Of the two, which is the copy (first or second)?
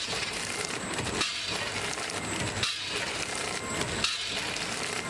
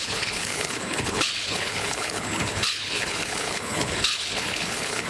second